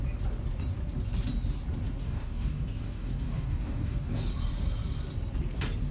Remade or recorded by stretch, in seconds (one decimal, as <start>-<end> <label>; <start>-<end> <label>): 0.0-2.0 recorded; 2.0-4.3 remade; 4.3-5.9 recorded